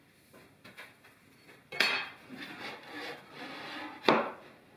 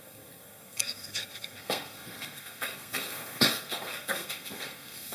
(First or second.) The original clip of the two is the first